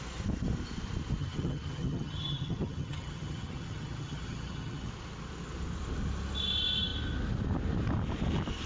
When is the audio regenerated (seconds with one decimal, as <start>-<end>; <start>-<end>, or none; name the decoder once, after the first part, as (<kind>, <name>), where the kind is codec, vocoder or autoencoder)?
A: 1.2-4.9 (vocoder, HiFi-GAN)